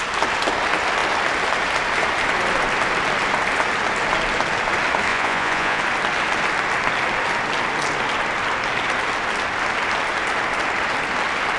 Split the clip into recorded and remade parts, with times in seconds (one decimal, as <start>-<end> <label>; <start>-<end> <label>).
0.0-5.1 recorded; 5.1-5.8 remade; 5.8-11.6 recorded